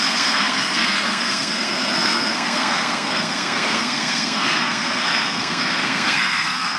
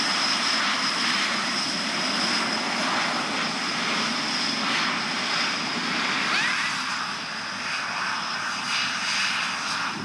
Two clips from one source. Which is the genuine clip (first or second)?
second